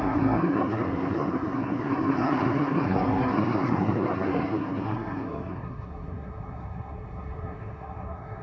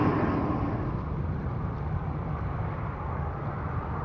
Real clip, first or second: second